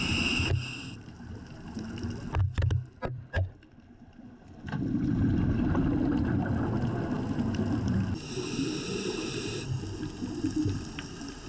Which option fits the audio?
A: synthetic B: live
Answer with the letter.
B